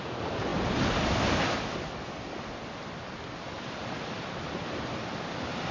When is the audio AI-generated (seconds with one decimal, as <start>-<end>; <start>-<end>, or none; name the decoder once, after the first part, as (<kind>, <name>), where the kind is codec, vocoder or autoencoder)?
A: none